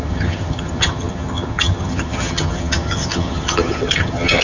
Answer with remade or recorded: remade